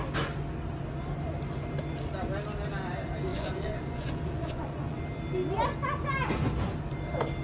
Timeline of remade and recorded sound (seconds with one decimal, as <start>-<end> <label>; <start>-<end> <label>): 0.0-3.3 recorded; 3.3-5.0 remade; 5.0-7.4 recorded